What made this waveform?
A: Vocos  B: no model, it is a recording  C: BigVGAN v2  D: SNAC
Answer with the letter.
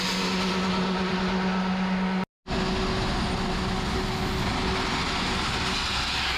B